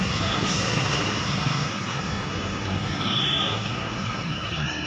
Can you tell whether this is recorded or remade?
remade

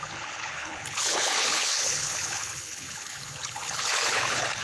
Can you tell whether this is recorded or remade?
remade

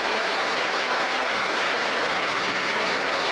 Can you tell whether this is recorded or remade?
remade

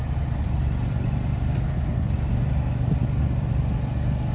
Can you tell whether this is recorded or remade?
recorded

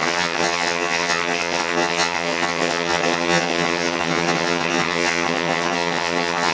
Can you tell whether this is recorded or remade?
remade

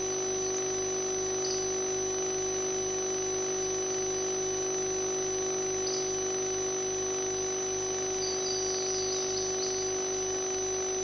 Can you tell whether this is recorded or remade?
recorded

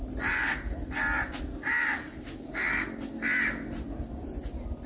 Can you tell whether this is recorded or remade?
recorded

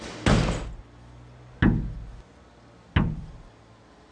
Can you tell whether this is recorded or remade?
recorded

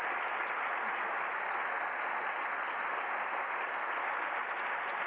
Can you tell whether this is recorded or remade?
recorded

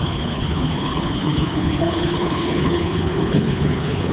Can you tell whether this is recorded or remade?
remade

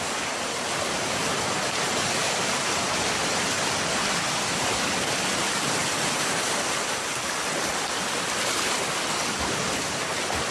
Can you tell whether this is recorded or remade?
recorded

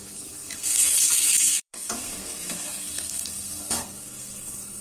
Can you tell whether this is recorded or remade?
remade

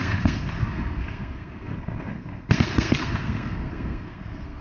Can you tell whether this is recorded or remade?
remade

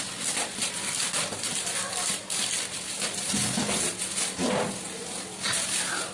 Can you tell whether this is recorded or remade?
recorded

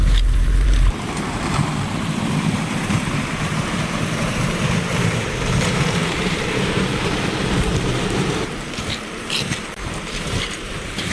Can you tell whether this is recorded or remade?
remade